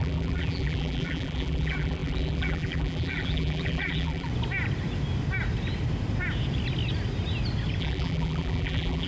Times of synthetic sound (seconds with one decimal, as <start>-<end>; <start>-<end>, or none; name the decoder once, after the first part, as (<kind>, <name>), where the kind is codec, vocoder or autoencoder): 0.0-4.3 (vocoder, BigVGAN v2); 7.8-9.1